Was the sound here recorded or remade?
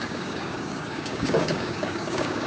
remade